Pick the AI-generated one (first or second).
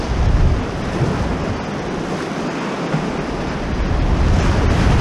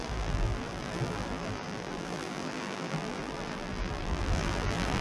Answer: second